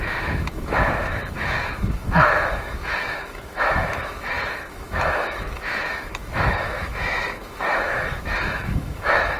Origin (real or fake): fake